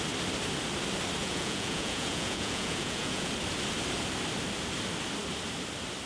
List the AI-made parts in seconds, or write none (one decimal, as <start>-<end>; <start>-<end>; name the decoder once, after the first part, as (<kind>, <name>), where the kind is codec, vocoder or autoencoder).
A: 1.2-3.3 (vocoder, Vocos)